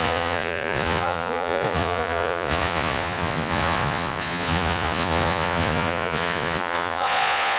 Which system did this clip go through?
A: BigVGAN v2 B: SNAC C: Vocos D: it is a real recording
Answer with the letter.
C